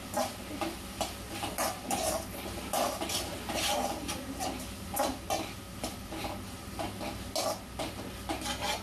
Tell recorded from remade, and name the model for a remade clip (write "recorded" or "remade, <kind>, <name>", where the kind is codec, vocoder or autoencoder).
recorded